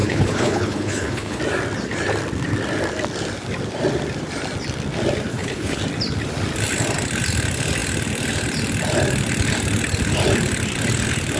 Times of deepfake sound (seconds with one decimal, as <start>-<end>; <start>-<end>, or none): 0.0-1.4; 5.3-5.8